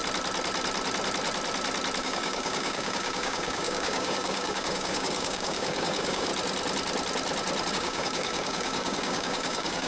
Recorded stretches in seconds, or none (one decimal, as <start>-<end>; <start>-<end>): 0.0-2.0; 6.3-7.7